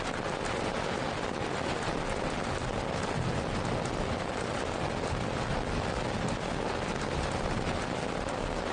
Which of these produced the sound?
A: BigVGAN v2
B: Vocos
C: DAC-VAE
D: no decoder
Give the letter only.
D